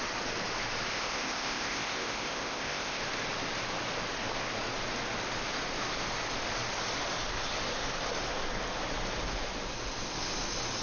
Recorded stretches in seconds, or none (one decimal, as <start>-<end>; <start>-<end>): 0.0-0.9; 3.0-10.8